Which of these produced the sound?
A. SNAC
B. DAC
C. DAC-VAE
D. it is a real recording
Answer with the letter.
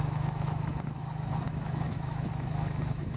C